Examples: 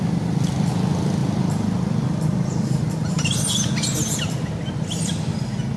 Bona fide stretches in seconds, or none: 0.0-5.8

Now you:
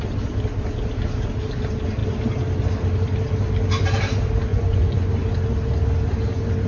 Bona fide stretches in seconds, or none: 0.0-4.5; 5.1-6.7

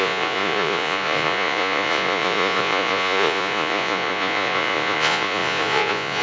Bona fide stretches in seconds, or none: none

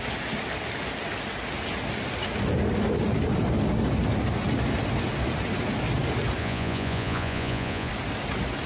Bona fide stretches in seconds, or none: 0.0-6.4; 7.9-8.7

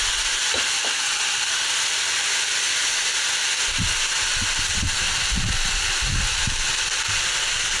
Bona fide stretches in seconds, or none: 0.0-7.8